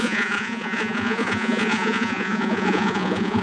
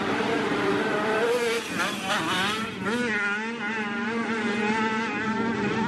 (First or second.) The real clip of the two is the second